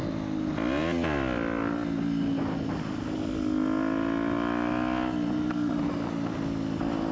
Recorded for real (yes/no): yes